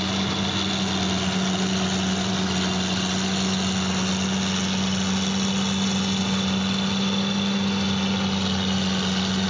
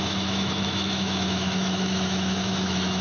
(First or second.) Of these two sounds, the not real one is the second